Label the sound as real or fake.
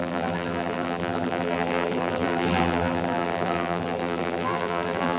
fake